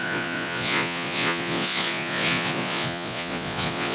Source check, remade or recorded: remade